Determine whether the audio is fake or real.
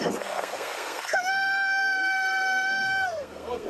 fake